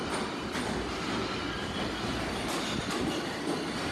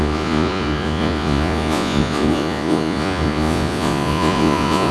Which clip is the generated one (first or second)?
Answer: second